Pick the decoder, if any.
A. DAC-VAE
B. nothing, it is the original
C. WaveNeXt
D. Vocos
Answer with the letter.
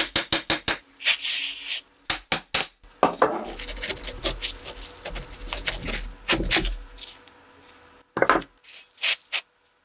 B